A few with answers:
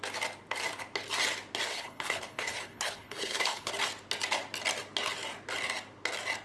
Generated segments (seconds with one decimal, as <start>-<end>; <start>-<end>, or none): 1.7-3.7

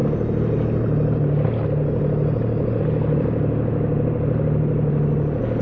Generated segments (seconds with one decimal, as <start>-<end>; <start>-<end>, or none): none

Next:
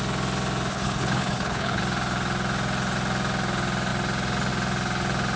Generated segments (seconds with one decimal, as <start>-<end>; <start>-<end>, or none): 0.7-1.8

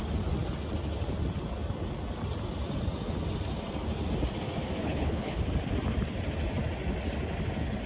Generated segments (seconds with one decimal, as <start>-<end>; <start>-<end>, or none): 4.8-5.4